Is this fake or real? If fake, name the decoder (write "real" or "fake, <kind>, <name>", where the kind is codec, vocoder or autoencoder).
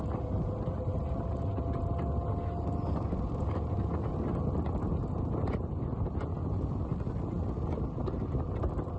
real